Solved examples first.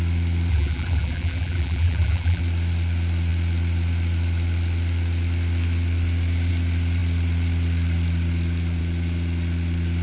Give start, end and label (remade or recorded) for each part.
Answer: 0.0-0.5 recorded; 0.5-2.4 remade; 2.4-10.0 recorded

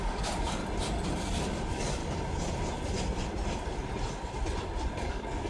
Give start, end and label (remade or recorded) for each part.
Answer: 0.0-0.6 remade; 0.6-1.5 recorded; 1.5-2.0 remade; 2.0-5.1 recorded; 5.1-5.5 remade

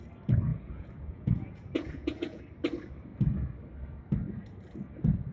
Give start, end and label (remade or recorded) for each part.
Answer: 0.0-0.5 recorded; 0.5-2.4 remade; 2.4-5.3 recorded

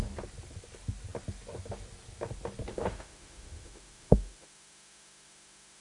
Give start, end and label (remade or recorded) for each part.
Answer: 0.0-2.7 recorded; 2.7-5.8 remade